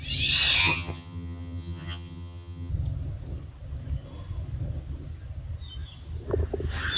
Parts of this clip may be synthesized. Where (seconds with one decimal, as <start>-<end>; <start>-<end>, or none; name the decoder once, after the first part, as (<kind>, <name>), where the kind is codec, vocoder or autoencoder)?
0.6-2.7 (vocoder, HiFi-GAN)